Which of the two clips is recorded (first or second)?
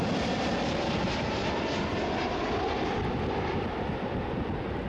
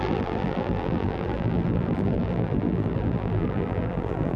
first